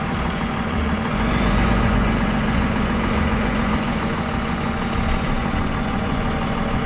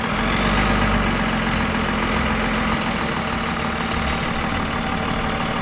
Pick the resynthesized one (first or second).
first